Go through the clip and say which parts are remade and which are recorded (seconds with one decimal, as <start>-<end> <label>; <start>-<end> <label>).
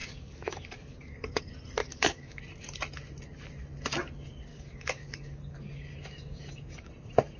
0.0-1.4 remade; 1.4-1.8 recorded; 1.8-2.4 remade; 2.4-4.5 recorded; 4.5-6.9 remade; 6.9-7.4 recorded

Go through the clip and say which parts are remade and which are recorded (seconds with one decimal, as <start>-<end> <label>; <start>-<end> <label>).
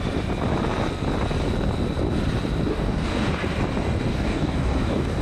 0.0-2.7 recorded; 2.7-3.3 remade; 3.3-4.1 recorded; 4.1-5.2 remade